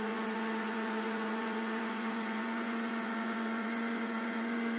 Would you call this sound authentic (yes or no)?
no